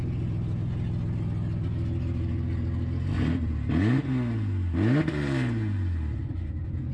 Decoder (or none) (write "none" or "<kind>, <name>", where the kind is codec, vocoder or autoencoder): none